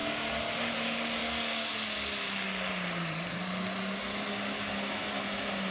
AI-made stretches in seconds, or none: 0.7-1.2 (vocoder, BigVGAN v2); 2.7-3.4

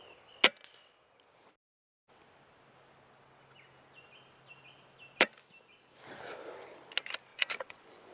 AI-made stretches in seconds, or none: 7.3-8.1 (vocoder, Vocos)

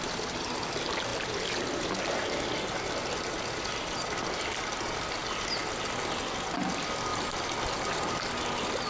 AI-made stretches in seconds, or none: none

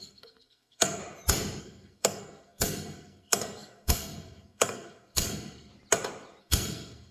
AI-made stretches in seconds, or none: 0.0-1.0 (codec, SNAC); 1.6-5.7; 6.4-7.1

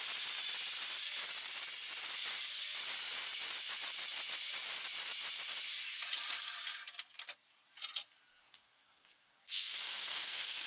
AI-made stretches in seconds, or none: 8.3-10.7 (codec, SNAC)

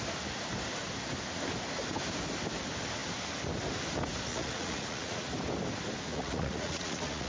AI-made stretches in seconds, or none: 4.3-5.3 (vocoder, Vocos); 6.1-7.3